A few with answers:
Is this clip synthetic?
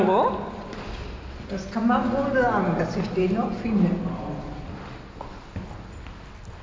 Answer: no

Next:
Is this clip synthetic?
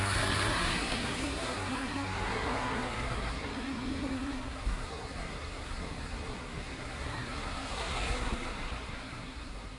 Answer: yes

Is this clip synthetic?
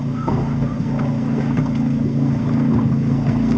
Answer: yes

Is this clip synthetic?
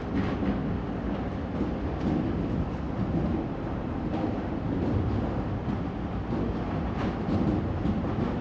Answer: no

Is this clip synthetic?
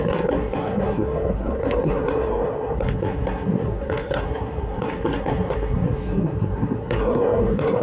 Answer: yes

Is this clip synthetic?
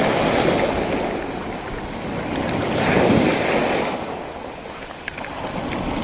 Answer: no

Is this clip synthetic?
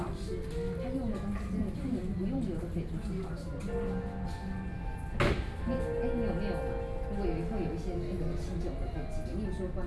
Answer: no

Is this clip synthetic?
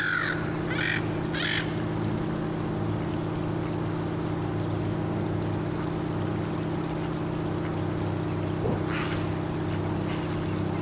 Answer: no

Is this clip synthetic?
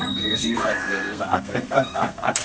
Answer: yes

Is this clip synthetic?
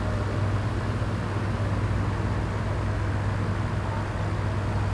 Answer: no